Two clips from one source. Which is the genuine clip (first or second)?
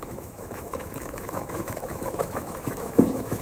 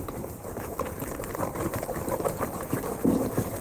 second